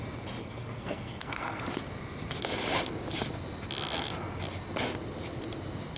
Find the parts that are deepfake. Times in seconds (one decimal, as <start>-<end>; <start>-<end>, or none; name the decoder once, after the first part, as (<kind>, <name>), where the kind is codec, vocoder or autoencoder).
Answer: 0.4-1.6 (codec, SNAC)